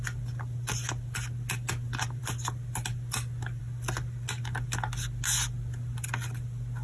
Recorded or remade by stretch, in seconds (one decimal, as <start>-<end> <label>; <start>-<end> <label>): 0.0-6.8 recorded